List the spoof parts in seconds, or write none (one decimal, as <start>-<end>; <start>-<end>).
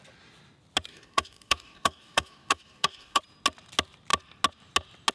0.9-3.2